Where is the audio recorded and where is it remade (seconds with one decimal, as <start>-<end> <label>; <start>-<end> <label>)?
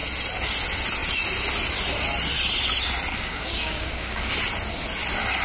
0.0-3.1 recorded; 3.1-4.3 remade; 4.3-5.4 recorded